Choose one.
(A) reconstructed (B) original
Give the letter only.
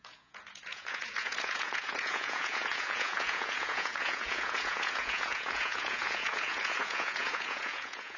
A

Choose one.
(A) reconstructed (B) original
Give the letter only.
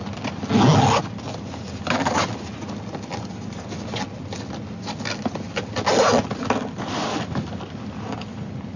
B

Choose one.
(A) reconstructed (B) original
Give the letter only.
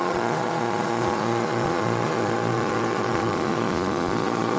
A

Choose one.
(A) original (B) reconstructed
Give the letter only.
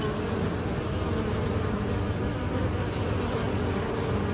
A